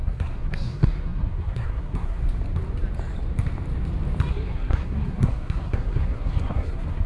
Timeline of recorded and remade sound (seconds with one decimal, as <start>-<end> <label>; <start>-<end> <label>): 0.0-2.2 remade; 2.2-4.3 recorded; 4.3-7.1 remade